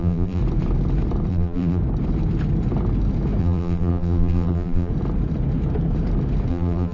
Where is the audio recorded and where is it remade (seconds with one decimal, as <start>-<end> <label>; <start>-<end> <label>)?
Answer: 0.0-0.4 remade; 0.4-1.3 recorded; 1.3-1.8 remade; 1.8-3.4 recorded; 3.4-4.9 remade; 4.9-6.5 recorded; 6.5-6.9 remade